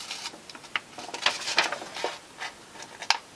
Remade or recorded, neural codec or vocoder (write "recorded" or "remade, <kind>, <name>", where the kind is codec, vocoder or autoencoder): recorded